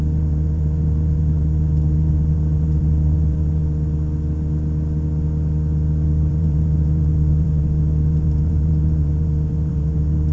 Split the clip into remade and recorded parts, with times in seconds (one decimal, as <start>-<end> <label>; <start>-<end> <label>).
0.0-3.6 remade; 3.6-6.3 recorded; 6.3-10.3 remade